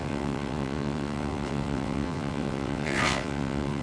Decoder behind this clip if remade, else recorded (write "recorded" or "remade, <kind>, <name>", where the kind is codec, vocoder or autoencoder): remade, vocoder, WaveNeXt